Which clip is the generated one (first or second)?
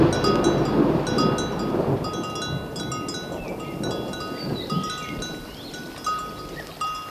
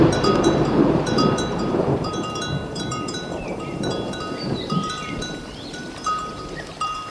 second